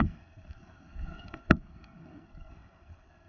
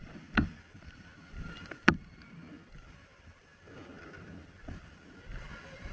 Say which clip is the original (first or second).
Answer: second